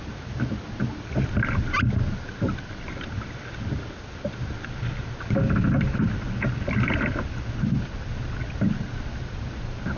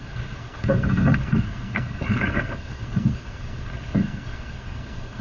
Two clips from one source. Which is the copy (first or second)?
second